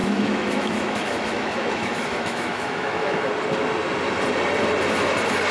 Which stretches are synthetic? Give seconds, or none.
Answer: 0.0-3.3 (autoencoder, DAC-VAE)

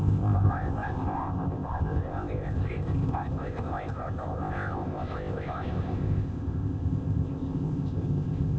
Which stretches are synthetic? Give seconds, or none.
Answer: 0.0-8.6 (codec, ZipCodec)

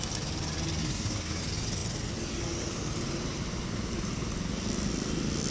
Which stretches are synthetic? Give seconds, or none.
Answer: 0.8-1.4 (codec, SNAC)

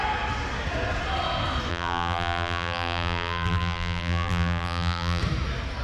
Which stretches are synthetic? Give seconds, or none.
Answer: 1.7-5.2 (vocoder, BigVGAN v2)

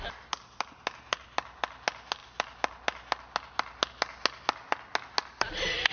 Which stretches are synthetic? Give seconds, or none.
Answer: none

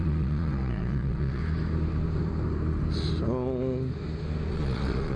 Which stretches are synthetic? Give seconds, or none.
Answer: 0.0-1.4 (vocoder, Vocos); 4.5-5.2